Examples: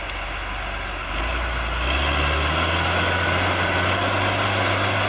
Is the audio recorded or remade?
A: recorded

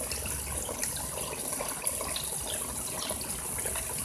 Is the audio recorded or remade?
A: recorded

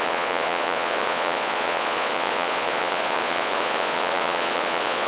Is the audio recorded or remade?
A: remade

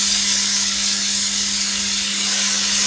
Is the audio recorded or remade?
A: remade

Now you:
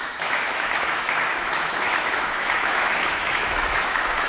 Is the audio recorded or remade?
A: remade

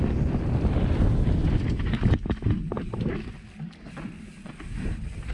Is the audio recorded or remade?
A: recorded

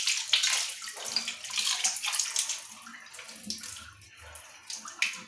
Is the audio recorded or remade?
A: recorded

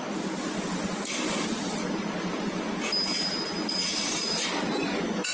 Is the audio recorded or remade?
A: recorded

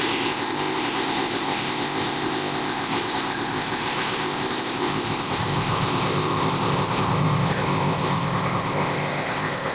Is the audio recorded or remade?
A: remade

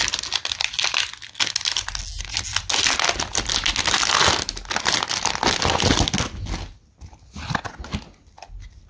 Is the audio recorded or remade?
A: recorded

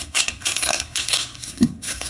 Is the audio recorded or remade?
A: remade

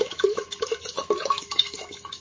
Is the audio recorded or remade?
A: remade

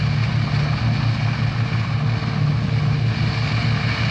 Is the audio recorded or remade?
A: recorded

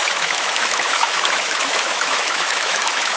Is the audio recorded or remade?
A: remade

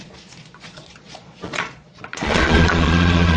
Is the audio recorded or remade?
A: remade